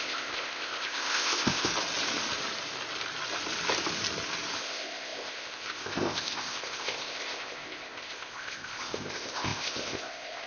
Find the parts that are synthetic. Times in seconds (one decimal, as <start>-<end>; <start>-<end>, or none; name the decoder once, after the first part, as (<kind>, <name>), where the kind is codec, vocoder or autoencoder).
0.0-1.7 (codec, ZipCodec); 4.6-10.5